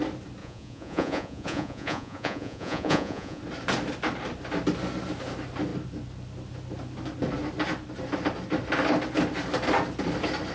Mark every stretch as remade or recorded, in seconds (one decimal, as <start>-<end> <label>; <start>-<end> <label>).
0.0-0.4 recorded; 0.4-3.4 remade; 3.4-10.5 recorded